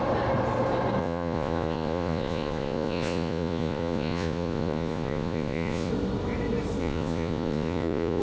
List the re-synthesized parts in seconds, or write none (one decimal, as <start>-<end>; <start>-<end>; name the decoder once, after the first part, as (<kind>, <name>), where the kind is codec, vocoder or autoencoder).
1.0-5.9 (vocoder, Vocos); 6.8-8.2